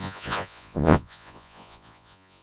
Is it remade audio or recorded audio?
remade